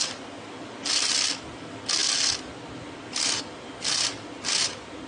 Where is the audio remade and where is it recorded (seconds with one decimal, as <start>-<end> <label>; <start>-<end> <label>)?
0.0-5.1 recorded